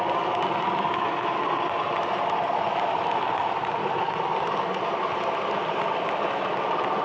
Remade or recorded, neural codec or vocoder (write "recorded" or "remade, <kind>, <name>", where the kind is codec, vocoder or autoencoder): recorded